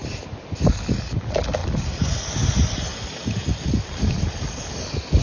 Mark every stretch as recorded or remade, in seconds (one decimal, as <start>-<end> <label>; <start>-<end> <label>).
0.0-5.2 recorded